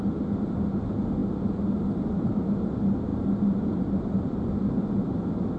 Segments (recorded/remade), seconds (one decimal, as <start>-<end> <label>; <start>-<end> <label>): 0.0-3.1 recorded; 3.1-4.7 remade; 4.7-5.6 recorded